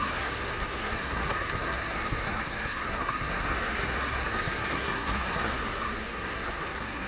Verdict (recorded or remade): remade